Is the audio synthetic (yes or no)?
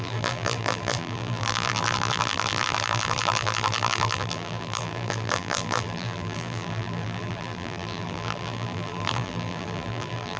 yes